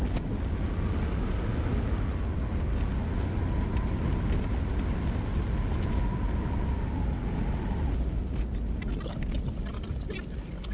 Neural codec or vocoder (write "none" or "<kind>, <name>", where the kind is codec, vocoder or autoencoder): none